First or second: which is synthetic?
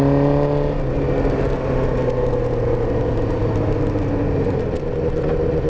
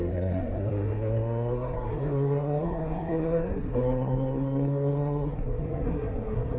second